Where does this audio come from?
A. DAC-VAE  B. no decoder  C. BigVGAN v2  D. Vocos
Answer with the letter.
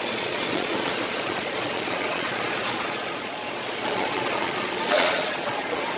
D